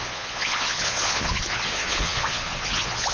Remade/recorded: remade